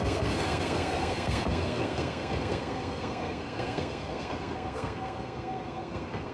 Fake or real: fake